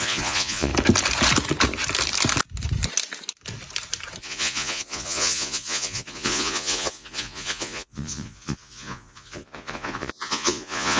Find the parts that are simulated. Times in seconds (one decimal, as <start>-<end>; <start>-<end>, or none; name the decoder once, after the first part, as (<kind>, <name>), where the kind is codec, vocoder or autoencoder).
0.0-0.7 (vocoder, Vocos); 4.2-11.0